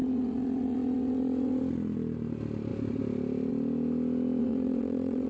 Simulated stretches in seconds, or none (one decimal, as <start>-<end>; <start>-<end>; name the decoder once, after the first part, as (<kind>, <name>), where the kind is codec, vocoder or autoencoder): 0.0-1.6 (vocoder, WaveNeXt); 4.4-5.3